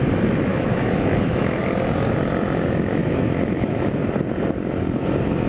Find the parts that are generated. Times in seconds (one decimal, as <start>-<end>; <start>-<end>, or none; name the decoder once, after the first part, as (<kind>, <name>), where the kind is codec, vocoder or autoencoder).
0.5-1.6 (autoencoder, DAC-VAE); 3.0-3.8